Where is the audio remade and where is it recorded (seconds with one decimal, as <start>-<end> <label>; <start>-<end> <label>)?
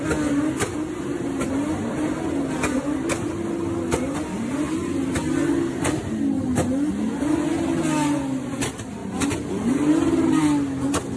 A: 0.0-11.2 recorded